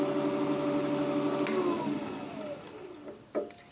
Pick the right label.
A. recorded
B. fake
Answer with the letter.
A